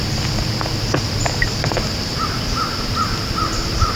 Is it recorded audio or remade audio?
recorded